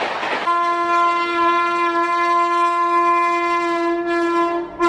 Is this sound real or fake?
real